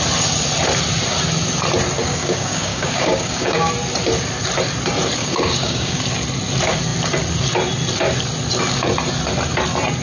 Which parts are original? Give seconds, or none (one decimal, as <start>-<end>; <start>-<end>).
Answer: 0.0-2.1; 3.7-5.2; 6.0-10.0